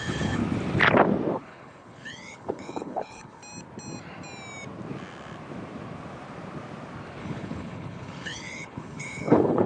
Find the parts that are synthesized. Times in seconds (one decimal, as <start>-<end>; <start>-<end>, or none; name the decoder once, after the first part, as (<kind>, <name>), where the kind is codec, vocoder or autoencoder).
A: 0.0-0.4 (codec, HILCodec); 1.4-3.4; 7.2-9.7